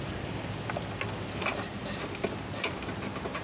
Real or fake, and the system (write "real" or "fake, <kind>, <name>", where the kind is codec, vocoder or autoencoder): real